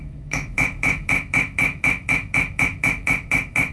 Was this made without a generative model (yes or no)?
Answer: no